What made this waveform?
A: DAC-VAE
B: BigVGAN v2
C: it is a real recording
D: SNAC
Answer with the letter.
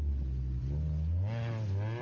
C